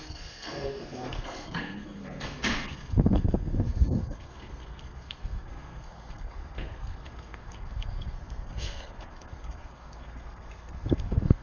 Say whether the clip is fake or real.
fake